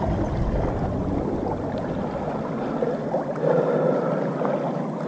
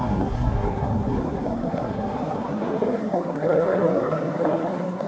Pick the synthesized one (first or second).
second